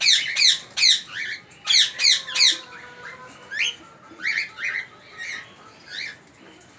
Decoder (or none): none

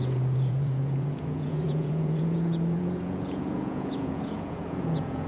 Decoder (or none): vocoder, Vocos